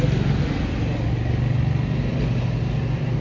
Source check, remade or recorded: recorded